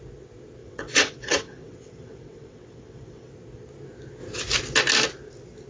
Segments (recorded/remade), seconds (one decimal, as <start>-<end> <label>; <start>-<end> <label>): 0.0-0.6 recorded; 0.6-3.3 remade; 3.3-5.7 recorded